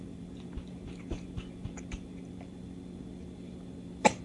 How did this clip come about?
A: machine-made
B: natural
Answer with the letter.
B